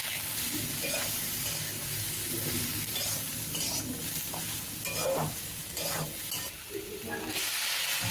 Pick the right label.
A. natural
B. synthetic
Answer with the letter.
A